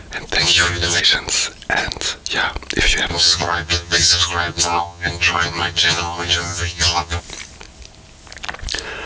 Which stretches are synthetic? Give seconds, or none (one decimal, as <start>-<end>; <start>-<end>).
0.4-1.0; 3.1-7.2